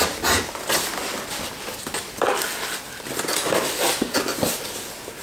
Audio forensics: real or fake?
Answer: fake